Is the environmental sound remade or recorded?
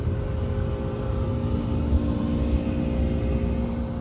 recorded